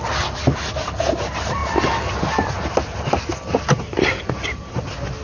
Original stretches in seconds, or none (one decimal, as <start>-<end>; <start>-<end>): 0.0-5.2